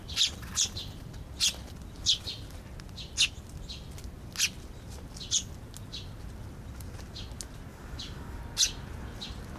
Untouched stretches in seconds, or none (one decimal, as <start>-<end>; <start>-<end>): 0.0-7.7; 8.4-9.6